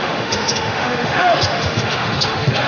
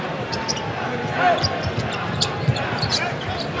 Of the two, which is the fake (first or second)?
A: first